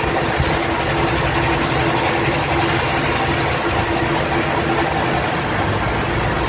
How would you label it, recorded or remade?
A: recorded